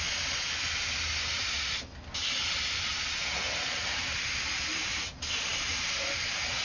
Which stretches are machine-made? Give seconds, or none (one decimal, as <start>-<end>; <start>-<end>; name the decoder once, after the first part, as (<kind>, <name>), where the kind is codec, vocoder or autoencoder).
none